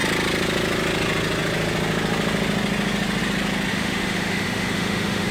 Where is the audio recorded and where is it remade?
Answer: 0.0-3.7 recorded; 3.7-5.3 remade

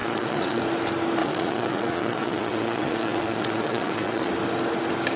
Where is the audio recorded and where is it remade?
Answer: 0.0-0.6 remade; 0.6-1.2 recorded; 1.2-4.3 remade; 4.3-5.2 recorded

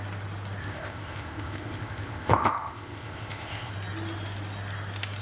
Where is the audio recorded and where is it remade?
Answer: 0.0-0.6 recorded; 0.6-3.7 remade; 3.7-5.2 recorded

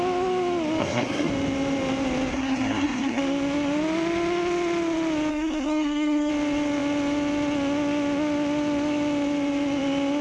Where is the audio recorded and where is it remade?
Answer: 0.0-0.8 recorded; 0.8-1.3 remade; 1.3-2.3 recorded; 2.3-3.2 remade; 3.2-5.3 recorded; 5.3-6.3 remade; 6.3-10.2 recorded

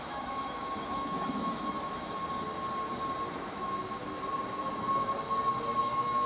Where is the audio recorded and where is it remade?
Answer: 0.0-2.2 remade; 2.2-3.3 recorded; 3.3-3.8 remade; 3.8-5.8 recorded; 5.8-6.3 remade

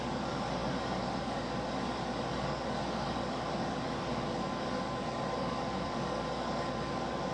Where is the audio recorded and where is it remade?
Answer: 0.0-7.3 remade

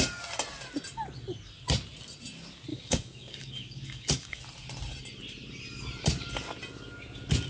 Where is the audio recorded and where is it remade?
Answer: 0.0-2.7 recorded; 2.7-4.4 remade; 4.4-7.5 recorded